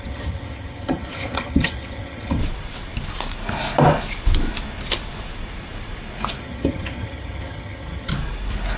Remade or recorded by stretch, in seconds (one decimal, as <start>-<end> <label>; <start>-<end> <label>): 0.0-2.4 remade; 2.4-6.4 recorded; 6.4-8.1 remade; 8.1-8.8 recorded